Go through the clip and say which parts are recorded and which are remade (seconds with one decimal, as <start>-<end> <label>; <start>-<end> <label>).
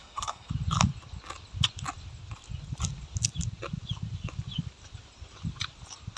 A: 0.0-0.5 remade; 0.5-6.2 recorded